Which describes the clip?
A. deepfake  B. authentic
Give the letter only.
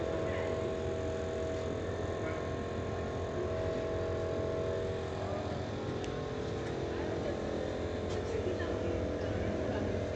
B